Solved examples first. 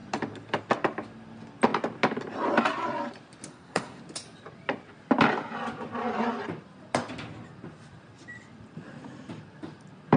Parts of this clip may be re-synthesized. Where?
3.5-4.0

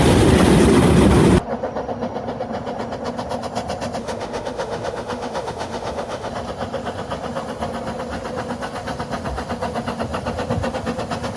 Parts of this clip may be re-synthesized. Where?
4.0-6.3

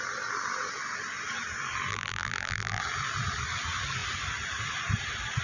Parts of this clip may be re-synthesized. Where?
1.9-2.8

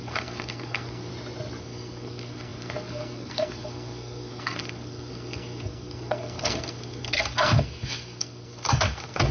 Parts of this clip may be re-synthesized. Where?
0.0-1.1; 1.6-9.3